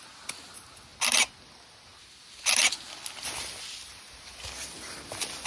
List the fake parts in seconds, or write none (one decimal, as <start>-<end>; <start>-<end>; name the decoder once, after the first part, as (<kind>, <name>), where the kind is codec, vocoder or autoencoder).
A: none